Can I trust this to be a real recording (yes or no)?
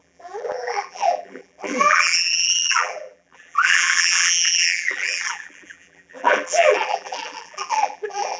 no